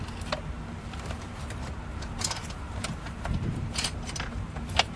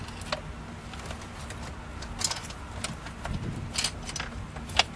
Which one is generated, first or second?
first